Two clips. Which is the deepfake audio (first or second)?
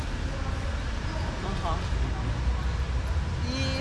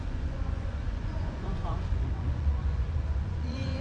second